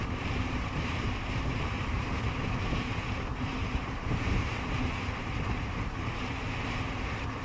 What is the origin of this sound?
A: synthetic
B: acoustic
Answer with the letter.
A